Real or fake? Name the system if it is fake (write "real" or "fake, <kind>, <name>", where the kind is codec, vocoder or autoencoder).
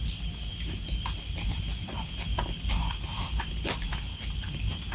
real